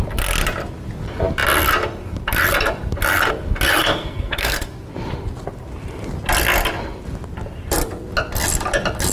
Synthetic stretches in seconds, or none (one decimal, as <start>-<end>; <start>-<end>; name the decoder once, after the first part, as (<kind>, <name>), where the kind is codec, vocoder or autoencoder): 3.8-4.7 (codec, SNAC)